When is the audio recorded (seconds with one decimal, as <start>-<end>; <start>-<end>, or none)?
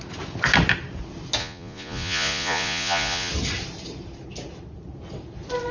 0.0-1.4; 3.3-5.7